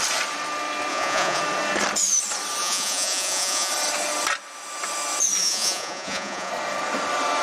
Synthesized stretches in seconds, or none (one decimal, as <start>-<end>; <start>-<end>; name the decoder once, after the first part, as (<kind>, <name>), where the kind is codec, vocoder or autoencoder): 0.9-1.4 (vocoder, Vocos); 2.6-3.7; 5.4-6.5